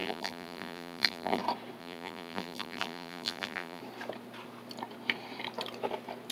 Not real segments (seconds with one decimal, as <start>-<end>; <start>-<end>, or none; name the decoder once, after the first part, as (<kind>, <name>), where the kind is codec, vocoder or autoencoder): 0.0-1.4 (vocoder, BigVGAN v2); 1.8-3.8

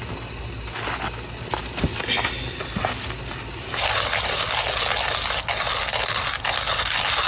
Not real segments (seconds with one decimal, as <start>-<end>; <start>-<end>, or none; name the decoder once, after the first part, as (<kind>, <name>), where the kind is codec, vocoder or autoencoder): none

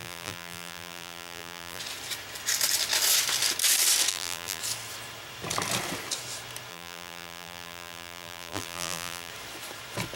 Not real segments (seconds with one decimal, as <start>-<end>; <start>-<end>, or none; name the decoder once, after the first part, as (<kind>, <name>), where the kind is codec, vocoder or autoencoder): 0.0-1.8 (vocoder, BigVGAN v2); 4.1-4.6; 6.7-9.3

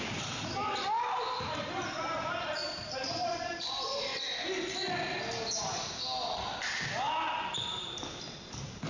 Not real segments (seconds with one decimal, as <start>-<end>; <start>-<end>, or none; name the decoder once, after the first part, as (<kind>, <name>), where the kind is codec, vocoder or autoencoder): 0.0-4.1 (vocoder, BigVGAN v2); 7.5-8.9

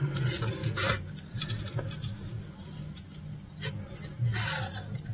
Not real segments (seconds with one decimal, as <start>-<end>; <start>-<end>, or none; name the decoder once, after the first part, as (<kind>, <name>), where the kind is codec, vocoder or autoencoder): none

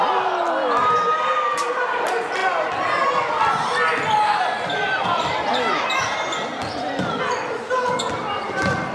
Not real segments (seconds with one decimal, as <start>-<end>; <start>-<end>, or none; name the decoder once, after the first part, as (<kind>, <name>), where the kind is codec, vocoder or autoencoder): 0.8-2.0 (vocoder, BigVGAN v2)

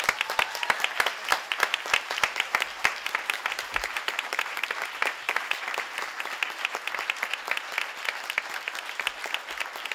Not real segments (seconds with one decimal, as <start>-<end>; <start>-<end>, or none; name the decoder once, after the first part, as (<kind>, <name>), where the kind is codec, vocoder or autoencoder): 1.3-6.2 (vocoder, BigVGAN v2)

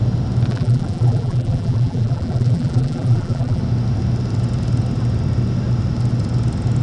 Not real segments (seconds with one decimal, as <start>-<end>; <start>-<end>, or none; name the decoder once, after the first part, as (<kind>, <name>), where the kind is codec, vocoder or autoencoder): 0.5-3.6 (vocoder, BigVGAN v2)